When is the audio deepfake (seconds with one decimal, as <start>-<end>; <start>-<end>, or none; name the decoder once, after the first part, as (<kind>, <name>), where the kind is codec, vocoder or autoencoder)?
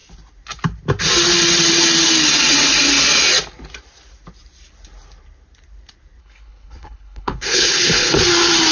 6.2-8.2 (codec, HILCodec)